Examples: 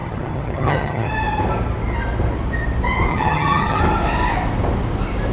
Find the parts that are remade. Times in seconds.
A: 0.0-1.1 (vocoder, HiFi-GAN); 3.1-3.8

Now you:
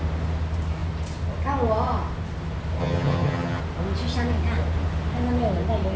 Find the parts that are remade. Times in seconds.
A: 2.8-3.6 (vocoder, HiFi-GAN)

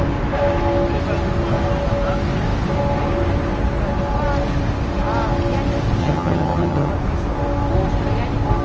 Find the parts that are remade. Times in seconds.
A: 6.0-6.9 (vocoder, HiFi-GAN)

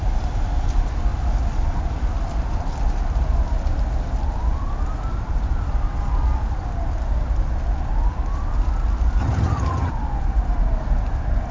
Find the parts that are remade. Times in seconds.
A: 9.2-9.9 (vocoder, HiFi-GAN)

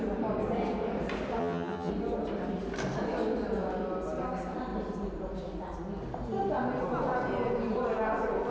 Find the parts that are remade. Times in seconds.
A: 1.4-1.9 (vocoder, HiFi-GAN)